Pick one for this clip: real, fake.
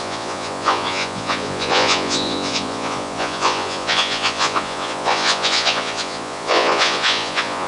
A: fake